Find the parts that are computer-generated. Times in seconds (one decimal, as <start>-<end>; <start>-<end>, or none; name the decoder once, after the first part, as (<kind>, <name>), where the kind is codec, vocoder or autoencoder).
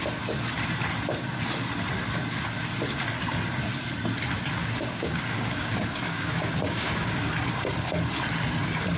4.6-7.3 (codec, DAC)